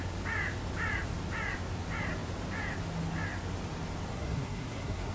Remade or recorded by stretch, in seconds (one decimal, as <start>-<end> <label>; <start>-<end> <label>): 0.0-4.1 recorded; 4.1-5.1 remade